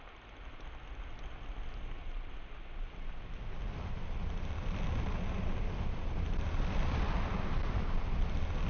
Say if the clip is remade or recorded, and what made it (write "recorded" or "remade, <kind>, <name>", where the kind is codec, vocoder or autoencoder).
recorded